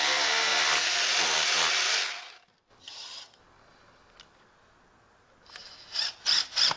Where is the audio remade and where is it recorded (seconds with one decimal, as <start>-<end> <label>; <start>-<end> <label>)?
0.0-2.8 recorded; 2.8-3.4 remade; 3.4-6.8 recorded